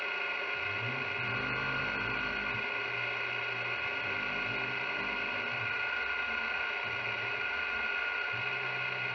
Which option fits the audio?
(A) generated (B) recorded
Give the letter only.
B